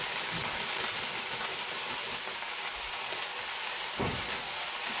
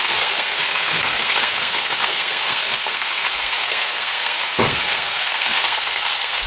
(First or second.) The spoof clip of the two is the second